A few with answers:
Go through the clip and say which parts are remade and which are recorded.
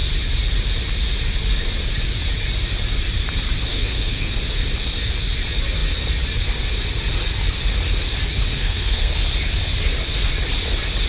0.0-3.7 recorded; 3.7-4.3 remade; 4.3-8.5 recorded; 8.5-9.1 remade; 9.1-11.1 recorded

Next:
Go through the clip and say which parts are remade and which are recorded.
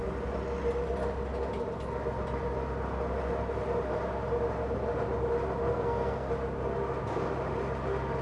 0.0-5.7 recorded; 5.7-6.3 remade; 6.3-8.2 recorded